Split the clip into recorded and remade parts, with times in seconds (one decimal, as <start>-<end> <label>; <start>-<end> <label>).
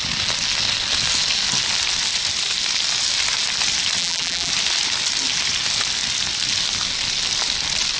0.0-4.0 recorded; 4.0-4.5 remade; 4.5-8.0 recorded